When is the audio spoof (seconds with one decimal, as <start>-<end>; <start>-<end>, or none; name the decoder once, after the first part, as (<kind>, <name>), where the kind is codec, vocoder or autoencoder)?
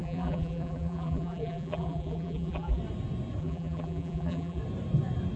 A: 0.0-2.8 (vocoder, BigVGAN v2); 3.4-4.6